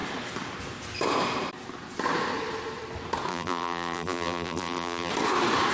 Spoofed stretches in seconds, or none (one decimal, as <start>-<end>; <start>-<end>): 3.3-5.1